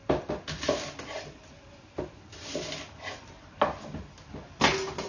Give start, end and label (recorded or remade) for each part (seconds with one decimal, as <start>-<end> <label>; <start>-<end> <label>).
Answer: 0.0-5.1 recorded